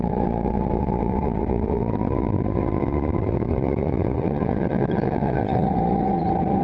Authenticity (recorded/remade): remade